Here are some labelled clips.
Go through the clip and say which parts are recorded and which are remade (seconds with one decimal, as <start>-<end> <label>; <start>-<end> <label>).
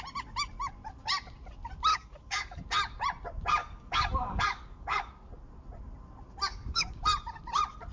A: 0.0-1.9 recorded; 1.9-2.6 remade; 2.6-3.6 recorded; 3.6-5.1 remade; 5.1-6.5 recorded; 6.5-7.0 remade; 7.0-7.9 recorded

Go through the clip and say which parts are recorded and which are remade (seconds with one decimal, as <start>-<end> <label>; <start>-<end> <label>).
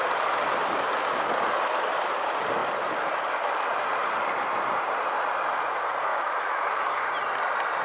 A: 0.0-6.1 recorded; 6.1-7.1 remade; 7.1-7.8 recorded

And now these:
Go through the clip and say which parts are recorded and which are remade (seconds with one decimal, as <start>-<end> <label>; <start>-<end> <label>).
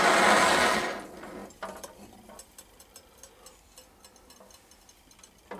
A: 0.0-5.6 recorded